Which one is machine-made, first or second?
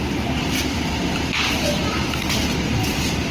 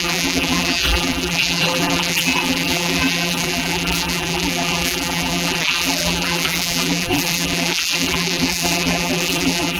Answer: second